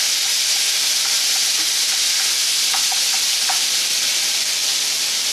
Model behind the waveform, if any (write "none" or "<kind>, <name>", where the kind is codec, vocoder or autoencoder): none